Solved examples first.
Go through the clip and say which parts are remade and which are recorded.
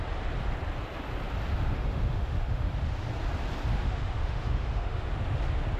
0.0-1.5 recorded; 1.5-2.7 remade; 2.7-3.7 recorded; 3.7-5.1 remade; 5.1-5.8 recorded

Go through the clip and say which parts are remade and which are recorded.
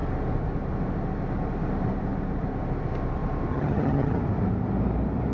0.0-3.5 recorded; 3.5-4.2 remade; 4.2-5.3 recorded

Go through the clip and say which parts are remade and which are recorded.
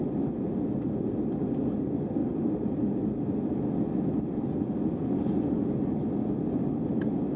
0.0-7.4 recorded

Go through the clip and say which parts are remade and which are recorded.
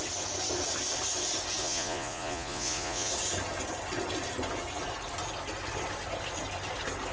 0.0-1.6 recorded; 1.6-3.1 remade; 3.1-7.1 recorded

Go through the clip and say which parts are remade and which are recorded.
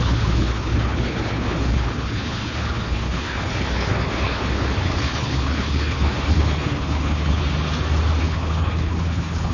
0.0-7.4 remade; 7.4-8.2 recorded; 8.2-9.5 remade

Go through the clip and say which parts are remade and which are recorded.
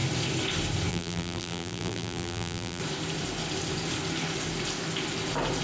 0.0-0.9 recorded; 0.9-2.8 remade; 2.8-5.6 recorded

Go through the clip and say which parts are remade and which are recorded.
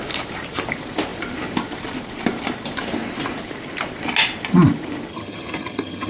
0.0-5.1 recorded; 5.1-6.1 remade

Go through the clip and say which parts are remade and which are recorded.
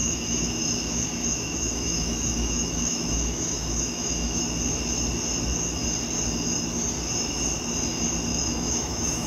0.0-4.4 remade; 4.4-8.3 recorded; 8.3-9.3 remade